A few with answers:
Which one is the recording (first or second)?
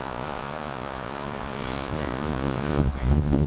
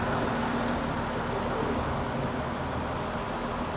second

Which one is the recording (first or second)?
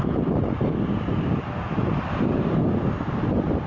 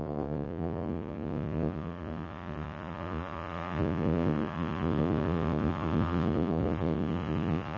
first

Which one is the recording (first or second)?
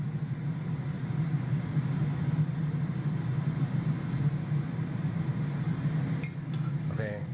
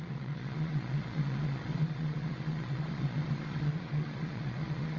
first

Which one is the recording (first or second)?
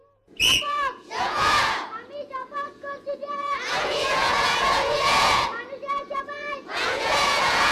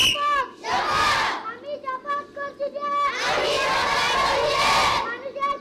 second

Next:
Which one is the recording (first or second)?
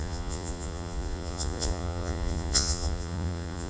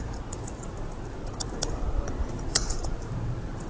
second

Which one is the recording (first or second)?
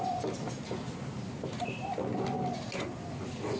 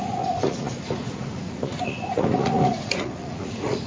first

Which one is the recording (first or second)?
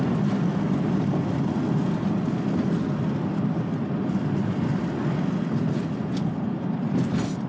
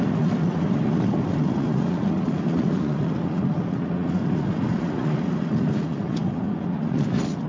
first